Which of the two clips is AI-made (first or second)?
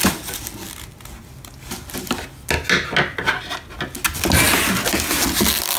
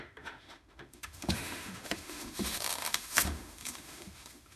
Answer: second